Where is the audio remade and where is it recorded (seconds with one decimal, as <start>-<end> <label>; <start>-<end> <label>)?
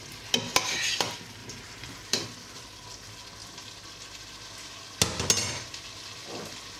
0.0-1.4 recorded; 1.4-2.2 remade; 2.2-6.8 recorded